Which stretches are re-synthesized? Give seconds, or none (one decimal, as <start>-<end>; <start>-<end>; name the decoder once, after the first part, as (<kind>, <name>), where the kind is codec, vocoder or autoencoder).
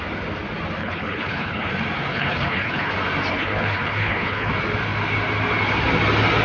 0.8-1.7 (codec, HILCodec); 2.1-2.9; 3.3-4.5